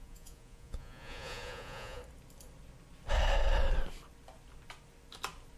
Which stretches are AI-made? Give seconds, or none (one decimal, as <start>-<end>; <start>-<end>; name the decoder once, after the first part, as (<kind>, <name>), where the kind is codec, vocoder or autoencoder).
0.0-2.0 (vocoder, Vocos)